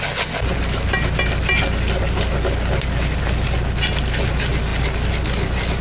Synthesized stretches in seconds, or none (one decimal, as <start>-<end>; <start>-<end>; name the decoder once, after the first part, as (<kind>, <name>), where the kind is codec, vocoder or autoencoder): none